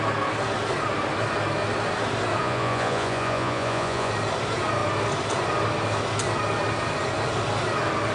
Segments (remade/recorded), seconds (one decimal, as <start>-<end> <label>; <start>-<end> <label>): 0.0-2.4 recorded; 2.4-4.1 remade; 4.1-8.1 recorded